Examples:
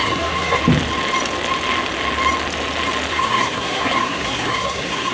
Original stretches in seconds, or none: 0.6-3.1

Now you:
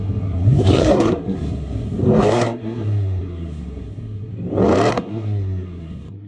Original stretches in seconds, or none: 4.3-4.9

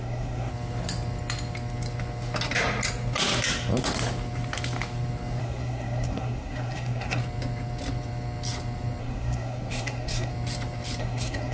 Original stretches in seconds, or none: 0.5-5.4; 7.2-9.0; 10.3-11.0

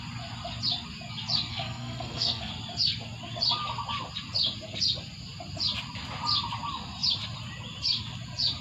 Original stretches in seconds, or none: 0.0-1.5; 2.5-8.6

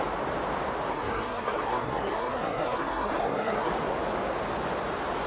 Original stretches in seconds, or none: 0.0-0.9; 3.7-5.3

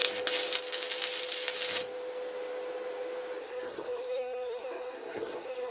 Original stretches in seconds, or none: 0.0-3.4